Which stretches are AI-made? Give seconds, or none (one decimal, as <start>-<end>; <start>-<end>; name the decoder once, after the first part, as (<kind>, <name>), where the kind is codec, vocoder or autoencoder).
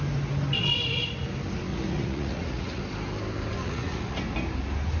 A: 1.7-2.8 (vocoder, Vocos); 3.6-4.2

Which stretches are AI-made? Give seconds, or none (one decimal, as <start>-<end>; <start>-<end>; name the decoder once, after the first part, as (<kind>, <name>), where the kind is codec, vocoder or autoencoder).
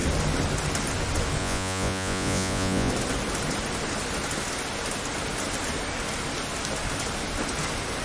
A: 1.4-2.9 (vocoder, Vocos)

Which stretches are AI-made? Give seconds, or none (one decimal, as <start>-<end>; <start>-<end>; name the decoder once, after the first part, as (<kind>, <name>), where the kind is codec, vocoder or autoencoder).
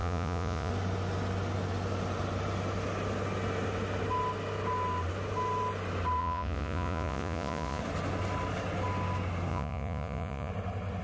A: 0.0-0.7 (vocoder, Vocos); 6.2-7.8; 9.5-10.5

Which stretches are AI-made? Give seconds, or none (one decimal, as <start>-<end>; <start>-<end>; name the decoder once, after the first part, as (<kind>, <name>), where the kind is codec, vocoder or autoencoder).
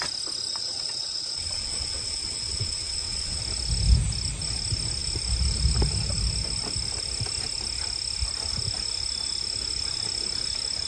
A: 0.5-3.4 (vocoder, WaveNeXt)